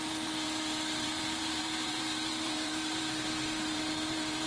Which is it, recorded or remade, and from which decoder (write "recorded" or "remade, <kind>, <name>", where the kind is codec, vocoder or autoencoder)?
remade, vocoder, BigVGAN v2